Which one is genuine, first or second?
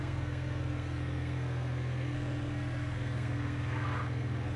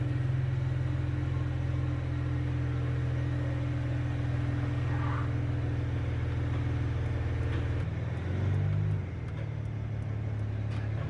second